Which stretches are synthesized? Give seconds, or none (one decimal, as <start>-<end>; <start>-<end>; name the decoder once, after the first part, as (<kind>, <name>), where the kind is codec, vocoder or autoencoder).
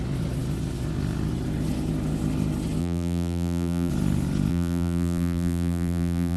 2.8-3.9 (vocoder, BigVGAN v2); 4.5-6.4